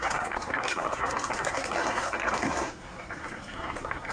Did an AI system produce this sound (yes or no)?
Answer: yes